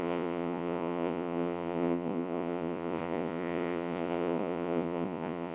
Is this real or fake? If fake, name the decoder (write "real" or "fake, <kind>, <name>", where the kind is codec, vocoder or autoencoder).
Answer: fake, vocoder, Vocos